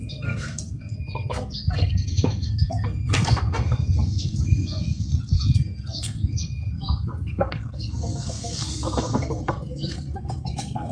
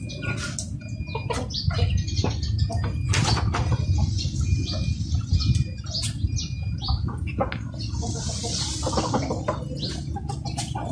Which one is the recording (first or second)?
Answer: second